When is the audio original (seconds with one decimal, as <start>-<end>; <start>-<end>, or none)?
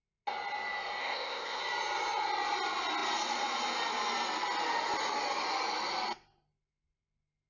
0.0-1.0; 1.6-7.5